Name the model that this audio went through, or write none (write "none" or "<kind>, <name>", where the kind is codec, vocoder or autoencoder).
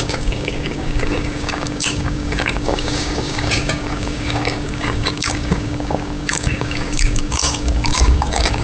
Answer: codec, DAC